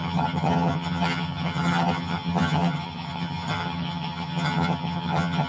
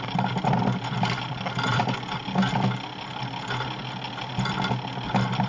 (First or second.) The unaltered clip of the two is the second